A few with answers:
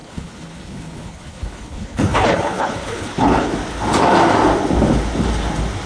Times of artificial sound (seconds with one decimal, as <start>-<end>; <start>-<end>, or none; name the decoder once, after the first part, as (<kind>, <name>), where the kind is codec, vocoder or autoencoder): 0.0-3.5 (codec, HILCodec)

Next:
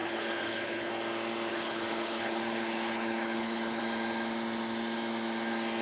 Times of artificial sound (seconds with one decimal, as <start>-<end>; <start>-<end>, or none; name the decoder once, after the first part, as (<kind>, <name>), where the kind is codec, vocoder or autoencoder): 0.0-0.9 (codec, HILCodec); 1.5-3.8

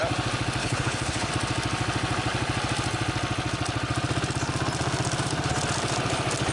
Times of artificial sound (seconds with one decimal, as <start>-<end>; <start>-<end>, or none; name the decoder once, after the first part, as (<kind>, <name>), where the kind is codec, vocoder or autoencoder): 0.6-1.3 (codec, HILCodec)

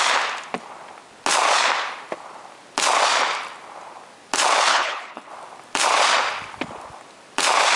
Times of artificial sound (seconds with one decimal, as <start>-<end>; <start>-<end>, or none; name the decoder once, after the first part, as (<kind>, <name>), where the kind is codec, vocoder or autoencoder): 4.7-5.3 (codec, HILCodec)

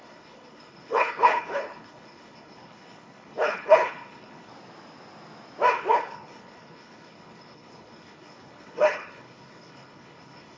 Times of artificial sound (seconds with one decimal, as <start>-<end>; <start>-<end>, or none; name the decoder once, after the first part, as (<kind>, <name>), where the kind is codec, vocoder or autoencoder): 0.0-4.5 (codec, HILCodec); 5.7-10.6

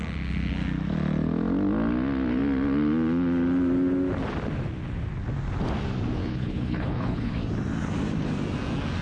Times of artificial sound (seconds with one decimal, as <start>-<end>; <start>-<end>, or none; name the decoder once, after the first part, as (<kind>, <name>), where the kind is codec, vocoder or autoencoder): 6.2-7.3 (codec, HILCodec)

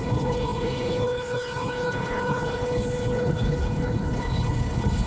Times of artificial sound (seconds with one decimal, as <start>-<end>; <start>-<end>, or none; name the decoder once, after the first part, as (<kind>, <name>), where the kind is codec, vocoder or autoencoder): 0.0-5.1 (codec, HILCodec)